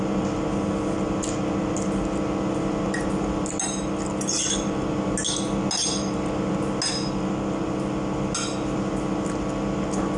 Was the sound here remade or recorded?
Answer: recorded